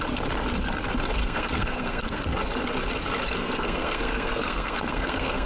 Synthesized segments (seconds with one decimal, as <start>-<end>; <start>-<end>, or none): 1.2-2.2; 3.4-5.5